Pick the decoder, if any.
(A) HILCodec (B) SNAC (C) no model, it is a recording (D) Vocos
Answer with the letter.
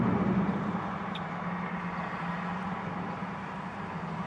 C